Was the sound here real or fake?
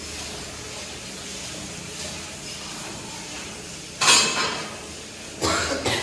real